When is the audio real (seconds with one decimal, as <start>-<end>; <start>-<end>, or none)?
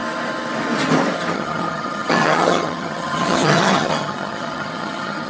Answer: 0.0-1.3